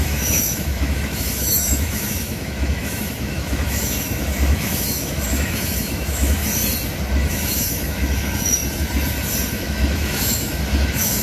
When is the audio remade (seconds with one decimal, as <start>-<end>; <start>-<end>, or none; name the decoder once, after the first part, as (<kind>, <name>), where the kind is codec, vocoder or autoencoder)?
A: 0.0-6.4 (autoencoder, DAC-VAE); 7.3-8.6; 9.5-11.2